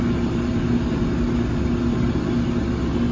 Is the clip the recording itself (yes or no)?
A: yes